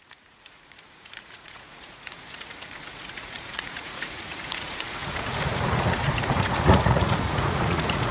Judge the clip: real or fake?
fake